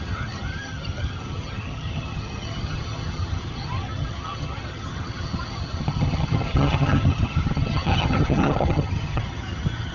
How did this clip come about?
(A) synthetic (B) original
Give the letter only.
A